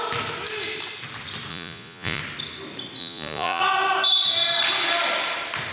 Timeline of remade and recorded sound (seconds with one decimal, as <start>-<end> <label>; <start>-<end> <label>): 0.0-1.5 recorded; 1.5-2.2 remade; 2.2-3.0 recorded; 3.0-3.6 remade; 3.6-5.7 recorded